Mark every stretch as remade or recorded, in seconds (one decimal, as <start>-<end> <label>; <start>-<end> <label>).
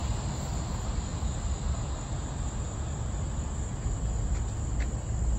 0.0-0.5 remade; 0.5-5.4 recorded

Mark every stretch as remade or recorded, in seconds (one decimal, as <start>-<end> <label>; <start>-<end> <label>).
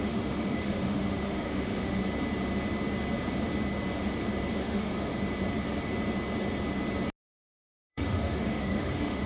0.0-2.0 remade; 2.0-4.6 recorded; 4.6-5.1 remade; 5.1-7.9 recorded; 7.9-9.3 remade